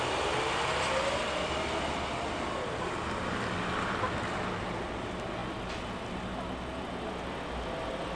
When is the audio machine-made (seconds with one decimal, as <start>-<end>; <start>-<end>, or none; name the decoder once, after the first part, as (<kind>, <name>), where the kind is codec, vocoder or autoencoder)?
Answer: none